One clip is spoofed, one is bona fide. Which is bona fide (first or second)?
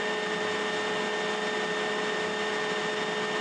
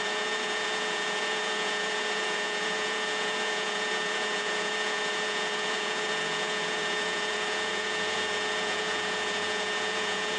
first